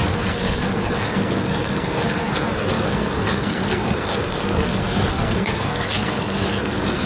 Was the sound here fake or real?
fake